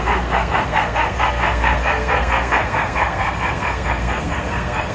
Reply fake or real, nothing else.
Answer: fake